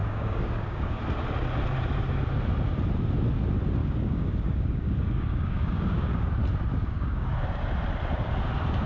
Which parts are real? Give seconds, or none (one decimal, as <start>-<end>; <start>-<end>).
1.0-3.8; 6.3-6.7; 7.3-8.9